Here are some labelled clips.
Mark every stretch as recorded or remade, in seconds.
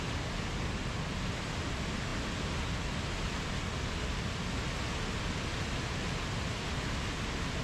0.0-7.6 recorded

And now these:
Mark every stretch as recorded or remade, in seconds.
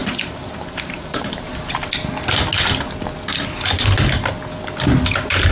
0.0-1.5 remade; 1.5-5.5 recorded